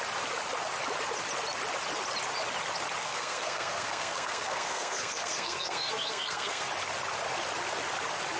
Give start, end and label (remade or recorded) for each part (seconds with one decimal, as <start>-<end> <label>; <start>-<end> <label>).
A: 0.0-3.0 recorded; 3.0-6.7 remade; 6.7-8.4 recorded